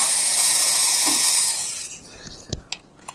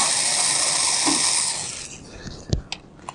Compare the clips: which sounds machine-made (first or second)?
first